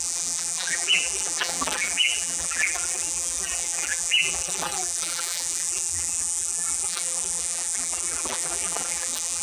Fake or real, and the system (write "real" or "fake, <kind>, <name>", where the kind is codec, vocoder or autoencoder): fake, vocoder, BigVGAN v2